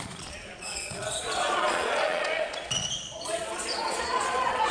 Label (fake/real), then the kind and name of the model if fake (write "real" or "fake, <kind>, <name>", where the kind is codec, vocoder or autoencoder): fake, vocoder, Vocos